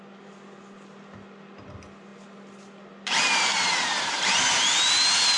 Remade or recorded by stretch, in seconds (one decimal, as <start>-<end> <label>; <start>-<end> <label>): 0.0-5.4 recorded